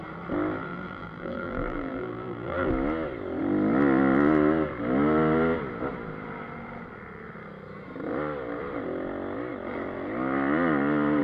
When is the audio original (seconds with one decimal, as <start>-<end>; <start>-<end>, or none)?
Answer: 0.0-0.7; 2.7-11.2